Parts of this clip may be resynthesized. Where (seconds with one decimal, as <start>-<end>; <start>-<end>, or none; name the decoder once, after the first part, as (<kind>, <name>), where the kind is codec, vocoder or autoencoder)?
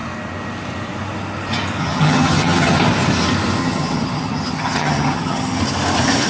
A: 1.8-2.8 (vocoder, HiFi-GAN); 3.6-5.6